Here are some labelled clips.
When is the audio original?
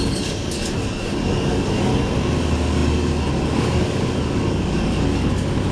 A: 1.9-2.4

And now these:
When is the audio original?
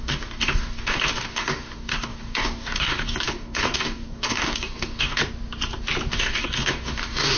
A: 5.2-6.1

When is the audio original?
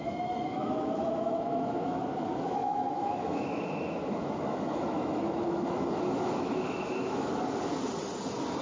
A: 7.3-8.6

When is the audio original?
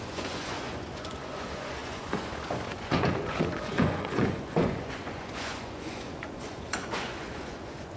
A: none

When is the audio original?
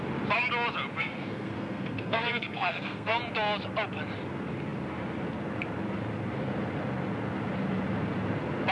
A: 0.0-1.2; 3.2-8.7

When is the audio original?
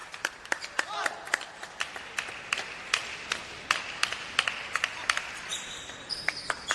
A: 4.0-6.7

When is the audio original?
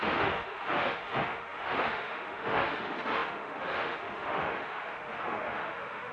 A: none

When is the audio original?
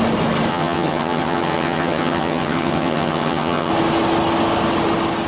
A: 0.0-0.5; 3.7-5.3